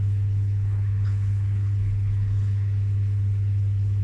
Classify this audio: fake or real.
fake